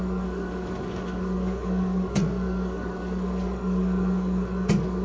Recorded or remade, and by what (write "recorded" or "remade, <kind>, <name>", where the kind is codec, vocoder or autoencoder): remade, codec, DAC